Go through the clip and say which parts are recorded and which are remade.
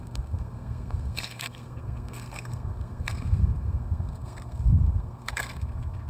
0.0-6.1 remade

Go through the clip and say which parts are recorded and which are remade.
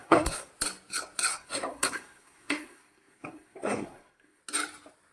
0.0-0.5 remade; 0.5-1.3 recorded; 1.3-4.4 remade; 4.4-5.1 recorded